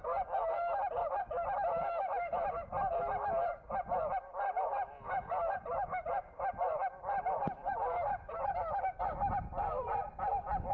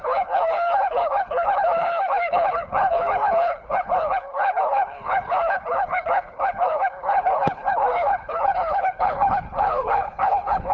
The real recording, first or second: first